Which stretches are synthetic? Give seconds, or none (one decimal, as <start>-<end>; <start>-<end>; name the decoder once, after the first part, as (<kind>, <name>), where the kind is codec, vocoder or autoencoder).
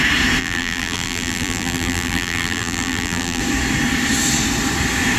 0.4-3.4 (vocoder, BigVGAN v2)